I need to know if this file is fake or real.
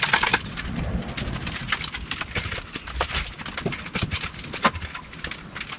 real